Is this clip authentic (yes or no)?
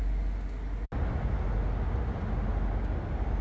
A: yes